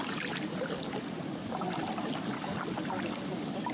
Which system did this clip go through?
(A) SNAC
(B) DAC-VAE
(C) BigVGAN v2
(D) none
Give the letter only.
D